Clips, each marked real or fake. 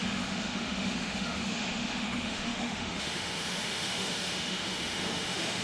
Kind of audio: fake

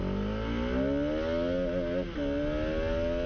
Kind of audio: real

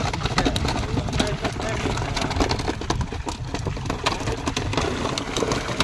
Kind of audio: real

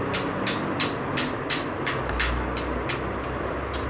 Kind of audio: real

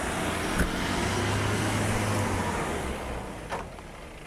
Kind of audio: real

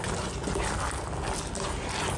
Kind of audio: real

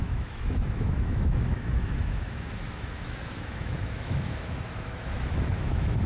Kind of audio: fake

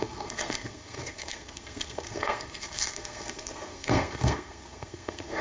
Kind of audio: fake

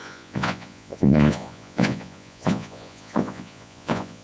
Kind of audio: fake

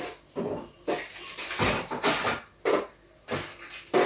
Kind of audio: real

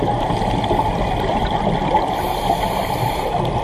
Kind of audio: real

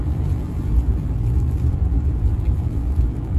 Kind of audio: fake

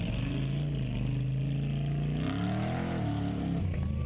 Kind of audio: real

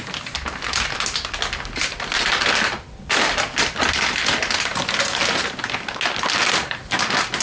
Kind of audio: real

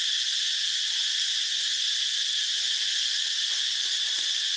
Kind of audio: real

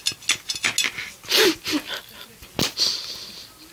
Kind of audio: real